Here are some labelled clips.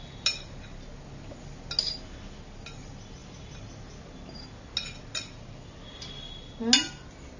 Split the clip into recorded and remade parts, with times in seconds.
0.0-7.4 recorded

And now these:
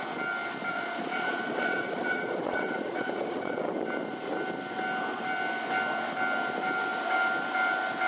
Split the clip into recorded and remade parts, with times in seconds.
0.0-0.7 recorded; 0.7-3.7 remade; 3.7-8.1 recorded

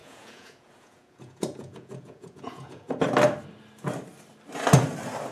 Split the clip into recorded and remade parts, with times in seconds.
0.0-3.0 remade; 3.0-5.3 recorded

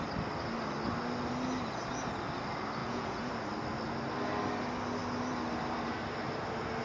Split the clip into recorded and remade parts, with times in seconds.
0.0-2.8 recorded; 2.8-3.3 remade; 3.3-6.8 recorded

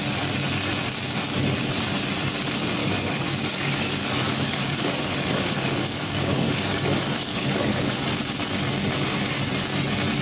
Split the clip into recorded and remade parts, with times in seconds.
0.0-2.8 recorded; 2.8-7.9 remade; 7.9-10.2 recorded

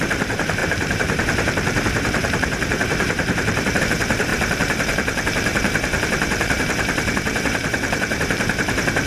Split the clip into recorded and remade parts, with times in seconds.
0.0-9.1 remade